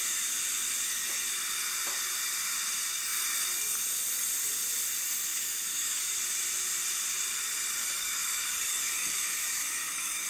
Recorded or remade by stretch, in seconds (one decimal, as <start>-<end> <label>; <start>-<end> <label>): 0.0-5.3 recorded; 5.3-6.1 remade; 6.1-7.8 recorded; 7.8-10.3 remade